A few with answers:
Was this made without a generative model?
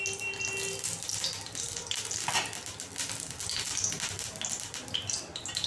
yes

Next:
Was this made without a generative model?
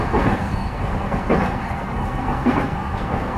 no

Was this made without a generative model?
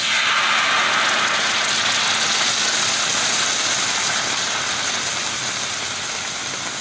yes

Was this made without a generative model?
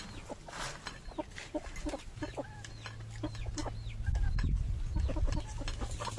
yes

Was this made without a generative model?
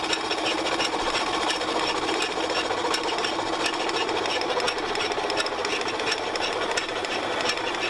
yes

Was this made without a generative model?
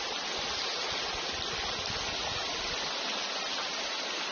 yes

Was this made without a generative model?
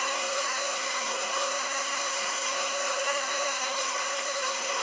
no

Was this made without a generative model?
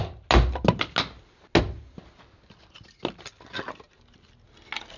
yes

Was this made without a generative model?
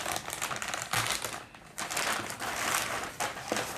yes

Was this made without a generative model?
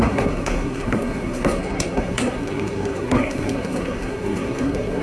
no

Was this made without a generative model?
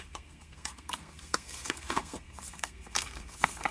no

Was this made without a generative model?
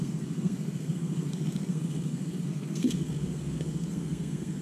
no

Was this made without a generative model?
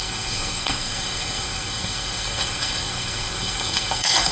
no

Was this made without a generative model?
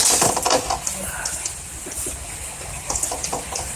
yes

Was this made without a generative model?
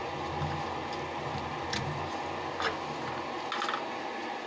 yes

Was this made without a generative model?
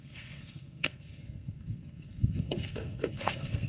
no